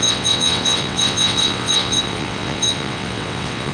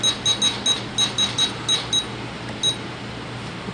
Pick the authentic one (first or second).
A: second